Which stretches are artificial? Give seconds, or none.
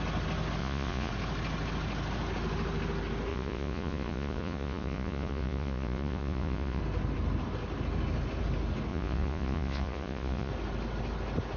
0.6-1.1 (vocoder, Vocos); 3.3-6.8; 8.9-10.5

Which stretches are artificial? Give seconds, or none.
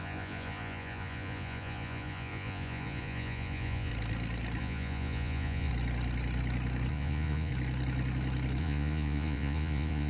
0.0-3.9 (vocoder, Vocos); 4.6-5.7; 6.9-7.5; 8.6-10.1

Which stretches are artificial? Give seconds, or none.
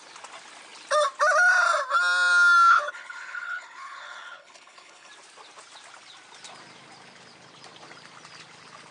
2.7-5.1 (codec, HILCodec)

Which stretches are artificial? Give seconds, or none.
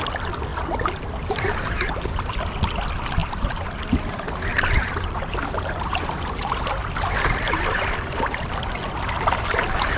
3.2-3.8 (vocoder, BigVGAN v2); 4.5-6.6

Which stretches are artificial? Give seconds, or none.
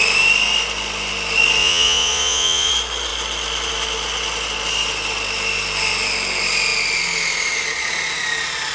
1.6-2.7 (vocoder, Vocos)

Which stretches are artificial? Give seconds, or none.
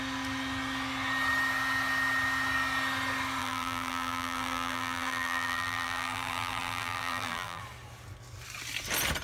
3.4-7.6 (vocoder, BigVGAN v2)